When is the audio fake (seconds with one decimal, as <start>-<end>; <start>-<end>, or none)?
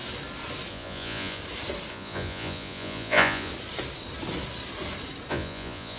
0.7-1.4; 1.9-3.5; 5.3-6.0